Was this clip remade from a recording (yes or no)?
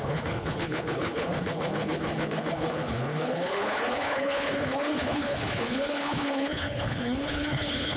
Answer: yes